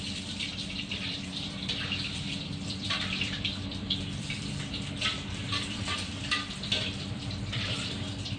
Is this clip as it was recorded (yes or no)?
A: no